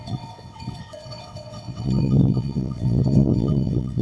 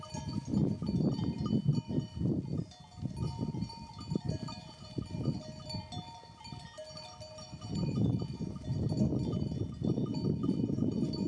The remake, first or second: first